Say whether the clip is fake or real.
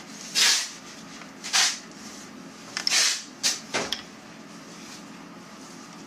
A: real